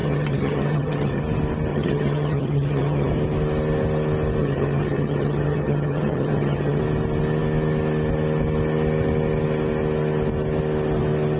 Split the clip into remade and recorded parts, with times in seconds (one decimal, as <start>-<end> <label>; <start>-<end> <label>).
0.0-1.2 remade; 1.2-1.7 recorded; 1.7-3.1 remade; 3.1-4.4 recorded; 4.4-6.8 remade; 6.8-11.4 recorded